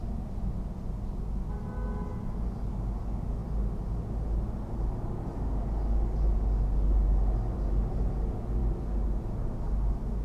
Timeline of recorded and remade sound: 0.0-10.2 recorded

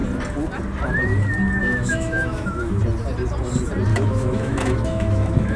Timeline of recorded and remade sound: 0.0-1.6 recorded; 1.6-2.8 remade; 2.8-3.9 recorded; 3.9-5.6 remade

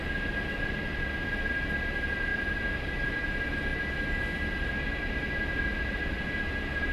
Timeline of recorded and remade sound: 0.0-2.3 recorded; 2.3-3.2 remade; 3.2-6.9 recorded